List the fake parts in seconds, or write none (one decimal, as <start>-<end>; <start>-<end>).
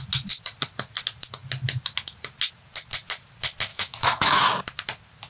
3.7-4.5